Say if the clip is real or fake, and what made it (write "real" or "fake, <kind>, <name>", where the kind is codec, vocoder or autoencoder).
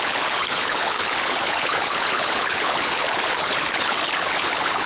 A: fake, codec, HILCodec